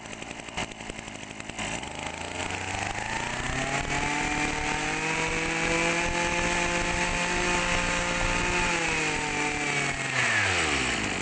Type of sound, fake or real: real